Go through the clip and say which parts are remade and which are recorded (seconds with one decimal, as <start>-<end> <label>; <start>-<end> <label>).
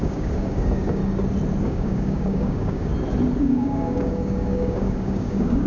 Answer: 0.0-1.0 remade; 1.0-1.6 recorded; 1.6-2.9 remade; 2.9-3.4 recorded; 3.4-5.7 remade